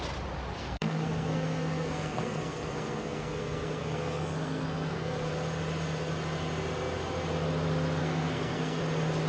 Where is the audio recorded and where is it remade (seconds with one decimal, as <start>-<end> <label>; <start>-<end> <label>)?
0.0-0.6 recorded; 0.6-5.3 remade; 5.3-8.0 recorded; 8.0-8.8 remade; 8.8-9.3 recorded